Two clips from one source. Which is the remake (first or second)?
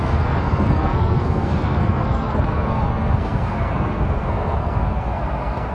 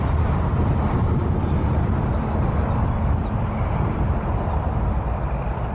first